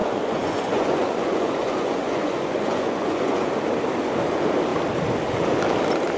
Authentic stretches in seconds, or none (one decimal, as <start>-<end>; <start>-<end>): 3.5-6.2